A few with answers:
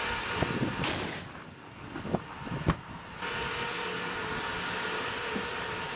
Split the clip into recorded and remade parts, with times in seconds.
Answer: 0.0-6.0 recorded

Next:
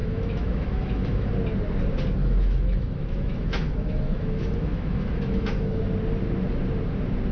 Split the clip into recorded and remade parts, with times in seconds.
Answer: 0.0-1.3 remade; 1.3-2.2 recorded; 2.2-5.8 remade; 5.8-7.3 recorded

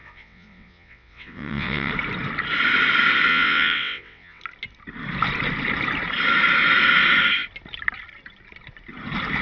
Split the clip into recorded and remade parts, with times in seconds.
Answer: 0.0-1.9 remade; 1.9-3.3 recorded; 3.3-4.4 remade; 4.4-9.4 recorded